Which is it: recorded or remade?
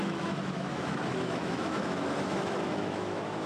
remade